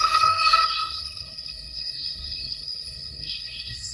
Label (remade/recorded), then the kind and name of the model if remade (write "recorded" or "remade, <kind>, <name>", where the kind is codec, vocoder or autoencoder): remade, codec, SNAC